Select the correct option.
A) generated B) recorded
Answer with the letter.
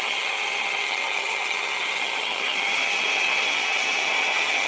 A